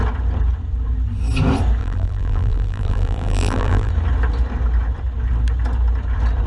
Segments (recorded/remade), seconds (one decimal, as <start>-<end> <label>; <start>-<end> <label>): 0.0-1.8 recorded; 1.8-3.9 remade; 3.9-6.5 recorded